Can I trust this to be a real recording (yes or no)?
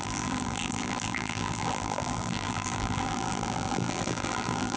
no